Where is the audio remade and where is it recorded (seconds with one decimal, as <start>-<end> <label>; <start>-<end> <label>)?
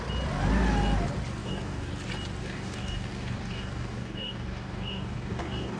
0.0-1.4 recorded; 1.4-1.9 remade; 1.9-2.4 recorded; 2.4-5.8 remade